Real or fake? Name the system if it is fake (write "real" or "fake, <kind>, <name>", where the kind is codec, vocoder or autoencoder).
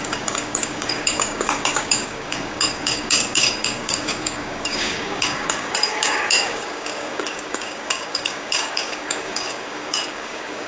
fake, codec, DAC